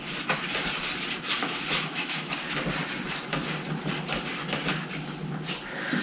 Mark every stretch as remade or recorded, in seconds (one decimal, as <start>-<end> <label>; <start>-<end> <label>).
0.0-1.4 recorded; 1.4-2.3 remade; 2.3-6.0 recorded